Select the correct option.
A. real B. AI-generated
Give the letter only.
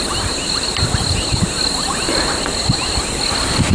A